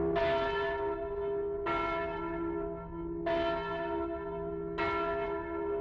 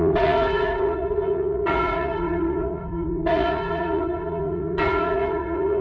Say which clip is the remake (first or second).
second